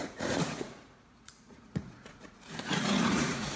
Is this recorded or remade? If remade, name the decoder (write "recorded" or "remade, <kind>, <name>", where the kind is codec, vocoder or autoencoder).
remade, vocoder, Vocos